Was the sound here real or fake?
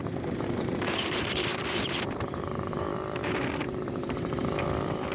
fake